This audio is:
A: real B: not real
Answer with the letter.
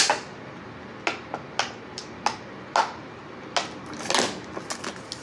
A